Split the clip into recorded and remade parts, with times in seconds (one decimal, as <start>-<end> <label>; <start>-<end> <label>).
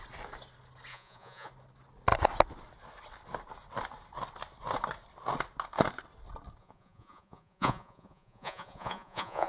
0.0-0.9 recorded; 0.9-1.5 remade; 1.5-6.6 recorded; 6.6-9.5 remade